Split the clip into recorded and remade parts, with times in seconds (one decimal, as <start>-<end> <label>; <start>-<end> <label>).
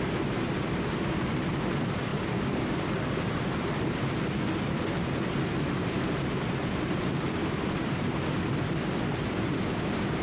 0.0-10.2 recorded